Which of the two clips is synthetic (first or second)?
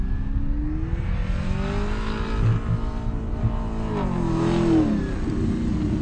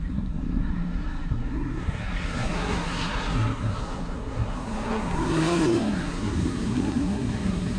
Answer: second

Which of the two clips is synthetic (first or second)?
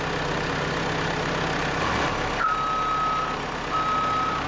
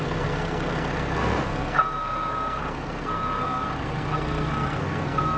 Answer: second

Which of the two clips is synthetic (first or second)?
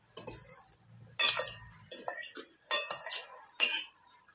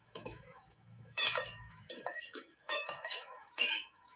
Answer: second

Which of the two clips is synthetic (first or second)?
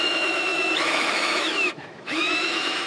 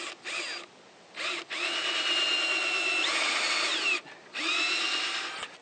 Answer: first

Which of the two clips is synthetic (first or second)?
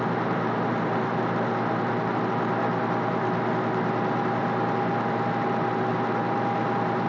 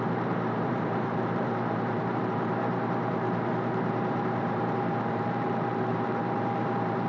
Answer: second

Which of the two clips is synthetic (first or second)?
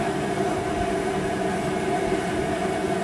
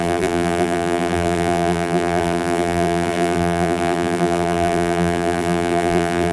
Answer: second